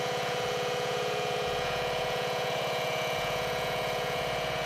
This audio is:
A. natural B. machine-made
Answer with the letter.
B